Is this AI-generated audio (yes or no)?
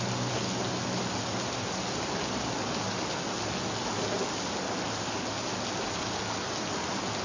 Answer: no